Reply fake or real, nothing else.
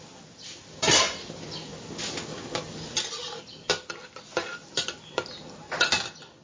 real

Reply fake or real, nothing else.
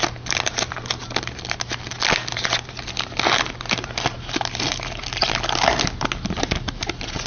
real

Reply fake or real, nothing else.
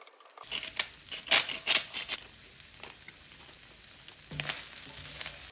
real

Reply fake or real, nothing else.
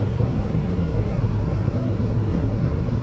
fake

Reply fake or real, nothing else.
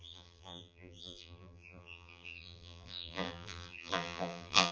fake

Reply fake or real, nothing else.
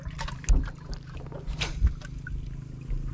real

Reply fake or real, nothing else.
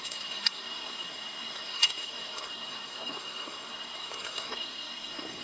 fake